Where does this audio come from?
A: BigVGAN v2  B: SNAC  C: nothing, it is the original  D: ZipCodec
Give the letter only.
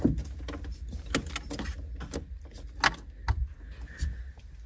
C